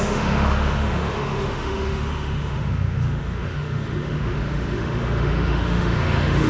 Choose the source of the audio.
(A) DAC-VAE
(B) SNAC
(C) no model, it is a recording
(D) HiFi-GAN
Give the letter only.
A